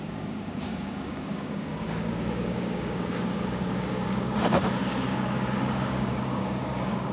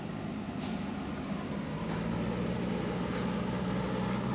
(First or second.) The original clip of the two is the second